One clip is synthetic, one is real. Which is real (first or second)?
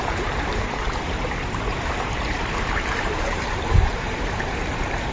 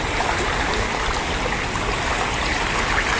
second